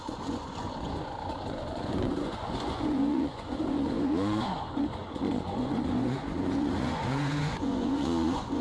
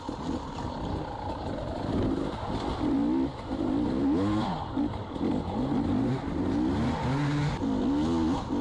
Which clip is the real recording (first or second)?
second